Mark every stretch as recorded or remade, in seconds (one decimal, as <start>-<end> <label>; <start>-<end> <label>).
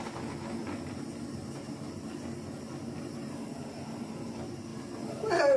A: 0.0-5.6 recorded